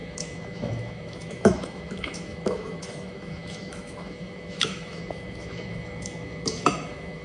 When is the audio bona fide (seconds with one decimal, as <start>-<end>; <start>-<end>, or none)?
none